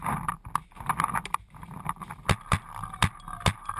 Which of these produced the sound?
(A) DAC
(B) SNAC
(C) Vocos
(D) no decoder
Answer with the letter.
D